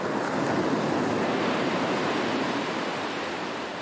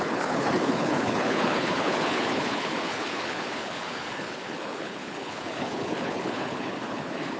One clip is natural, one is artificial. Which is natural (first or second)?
first